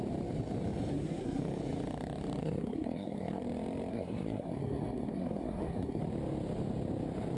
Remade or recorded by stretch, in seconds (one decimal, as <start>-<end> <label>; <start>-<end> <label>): 0.0-0.9 recorded; 0.9-1.4 remade; 1.4-2.4 recorded; 2.4-3.4 remade; 3.4-3.9 recorded; 3.9-6.0 remade; 6.0-7.4 recorded